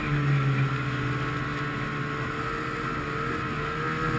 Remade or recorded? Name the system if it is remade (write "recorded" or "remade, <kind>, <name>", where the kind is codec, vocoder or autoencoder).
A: recorded